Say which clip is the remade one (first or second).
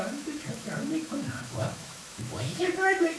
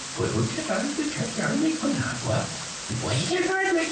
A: first